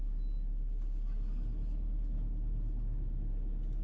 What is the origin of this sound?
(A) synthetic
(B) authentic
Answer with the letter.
B